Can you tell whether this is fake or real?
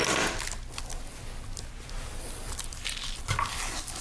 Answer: real